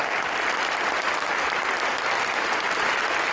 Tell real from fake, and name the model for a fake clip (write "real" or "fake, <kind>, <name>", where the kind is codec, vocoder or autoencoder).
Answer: real